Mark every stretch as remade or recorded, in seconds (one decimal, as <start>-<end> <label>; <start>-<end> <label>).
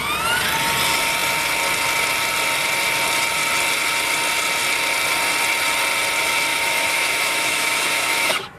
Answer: 0.0-6.5 recorded; 6.5-8.6 remade